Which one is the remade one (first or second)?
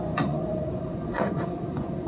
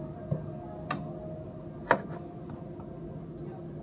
first